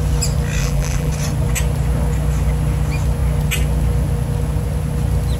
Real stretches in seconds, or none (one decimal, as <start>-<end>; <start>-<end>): 0.0-0.6; 1.1-5.4